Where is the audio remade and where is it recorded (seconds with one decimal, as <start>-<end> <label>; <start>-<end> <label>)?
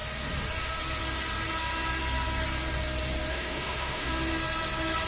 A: 0.0-3.3 recorded; 3.3-4.1 remade; 4.1-5.1 recorded